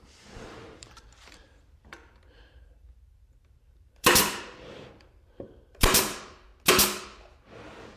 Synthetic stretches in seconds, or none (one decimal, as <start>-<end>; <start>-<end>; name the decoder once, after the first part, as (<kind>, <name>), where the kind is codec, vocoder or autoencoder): 0.0-6.5 (vocoder, BigVGAN v2)